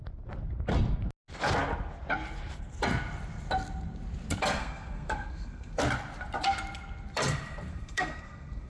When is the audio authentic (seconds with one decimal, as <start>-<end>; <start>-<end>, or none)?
0.0-4.6; 5.8-7.7